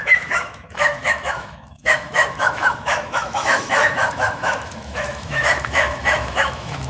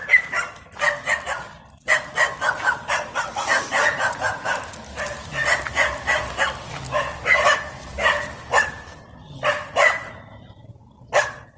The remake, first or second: first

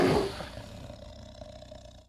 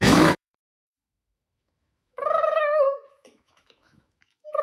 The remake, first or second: second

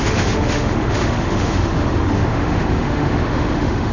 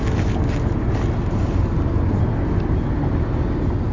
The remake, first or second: first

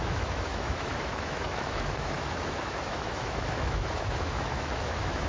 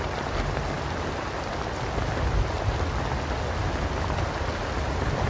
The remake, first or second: first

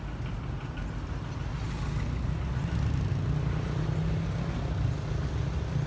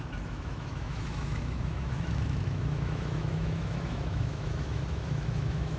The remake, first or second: second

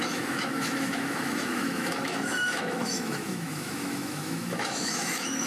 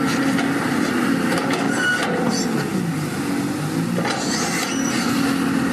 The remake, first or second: first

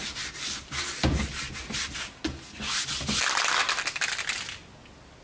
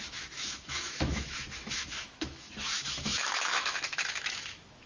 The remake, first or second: second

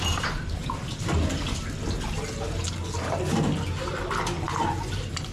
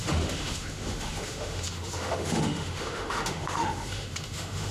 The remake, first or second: second